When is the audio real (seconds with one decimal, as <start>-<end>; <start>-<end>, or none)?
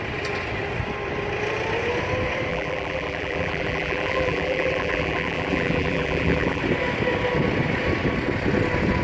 0.0-2.5; 6.6-9.0